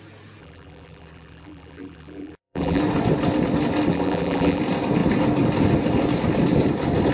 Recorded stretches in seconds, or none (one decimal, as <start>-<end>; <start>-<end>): 0.0-0.4; 2.8-3.9; 4.6-7.1